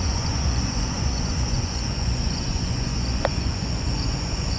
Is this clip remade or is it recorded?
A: remade